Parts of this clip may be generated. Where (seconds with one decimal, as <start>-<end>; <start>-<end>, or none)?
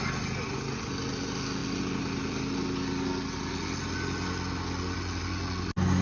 none